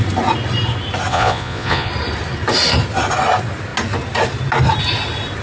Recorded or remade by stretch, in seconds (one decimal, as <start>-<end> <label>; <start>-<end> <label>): 0.0-1.1 recorded; 1.1-1.9 remade; 1.9-5.4 recorded